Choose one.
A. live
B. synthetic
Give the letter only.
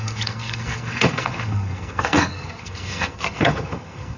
B